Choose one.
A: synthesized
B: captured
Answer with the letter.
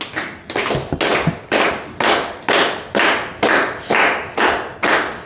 B